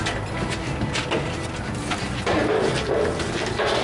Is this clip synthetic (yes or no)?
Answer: no